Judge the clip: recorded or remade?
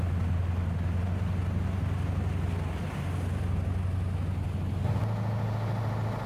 recorded